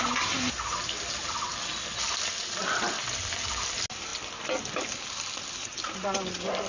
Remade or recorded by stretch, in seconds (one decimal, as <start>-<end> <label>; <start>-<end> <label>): 0.0-6.7 recorded